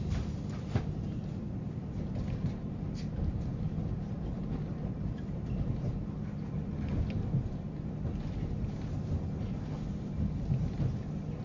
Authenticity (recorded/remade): recorded